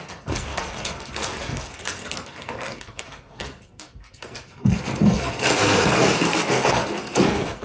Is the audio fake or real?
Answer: fake